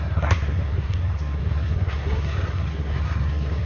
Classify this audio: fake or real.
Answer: fake